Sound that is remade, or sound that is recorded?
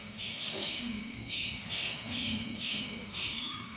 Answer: remade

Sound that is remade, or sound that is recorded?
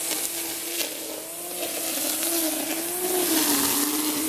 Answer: recorded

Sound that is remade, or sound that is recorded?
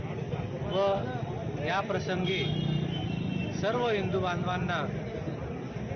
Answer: recorded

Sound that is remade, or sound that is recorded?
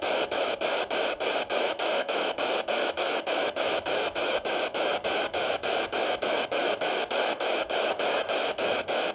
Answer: remade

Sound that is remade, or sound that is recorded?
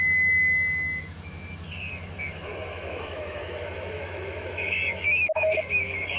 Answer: remade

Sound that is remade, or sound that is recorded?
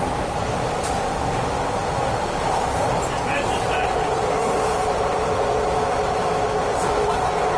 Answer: recorded